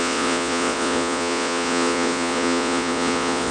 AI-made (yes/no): yes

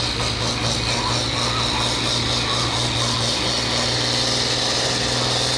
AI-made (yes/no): no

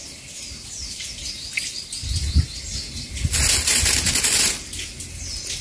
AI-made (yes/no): no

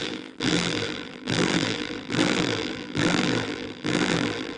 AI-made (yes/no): yes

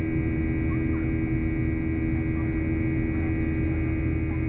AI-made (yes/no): no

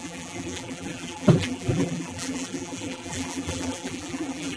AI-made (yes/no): yes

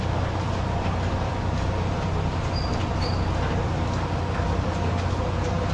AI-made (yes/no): no